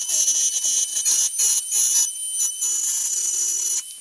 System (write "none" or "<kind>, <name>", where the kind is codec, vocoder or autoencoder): none